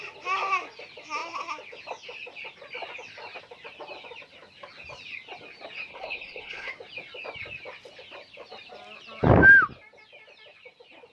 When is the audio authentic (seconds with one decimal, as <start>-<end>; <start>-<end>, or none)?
0.0-5.9; 6.7-11.1